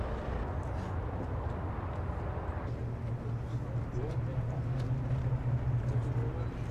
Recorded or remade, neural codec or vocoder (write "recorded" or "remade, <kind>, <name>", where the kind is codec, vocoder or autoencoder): recorded